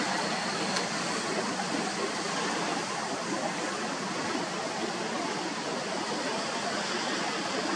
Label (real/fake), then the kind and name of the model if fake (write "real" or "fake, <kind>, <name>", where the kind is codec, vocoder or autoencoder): real